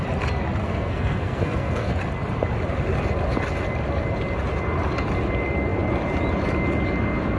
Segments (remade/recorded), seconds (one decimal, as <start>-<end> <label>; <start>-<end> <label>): 0.0-0.6 recorded; 0.6-1.9 remade; 1.9-7.4 recorded